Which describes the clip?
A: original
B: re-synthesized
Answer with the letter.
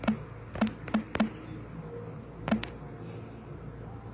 A